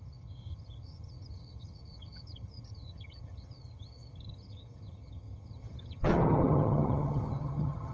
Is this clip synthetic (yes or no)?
yes